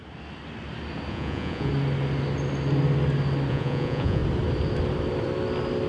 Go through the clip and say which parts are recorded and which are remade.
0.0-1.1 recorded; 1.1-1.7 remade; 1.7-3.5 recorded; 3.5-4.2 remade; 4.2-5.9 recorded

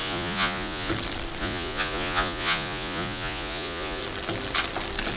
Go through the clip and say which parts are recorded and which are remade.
0.0-0.9 remade; 0.9-1.4 recorded; 1.4-4.0 remade; 4.0-5.2 recorded